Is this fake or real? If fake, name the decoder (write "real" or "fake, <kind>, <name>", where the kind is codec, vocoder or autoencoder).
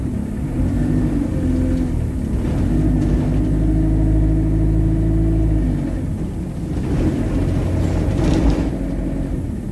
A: real